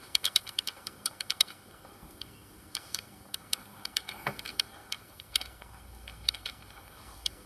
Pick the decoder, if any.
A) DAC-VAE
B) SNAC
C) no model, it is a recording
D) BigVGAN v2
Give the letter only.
B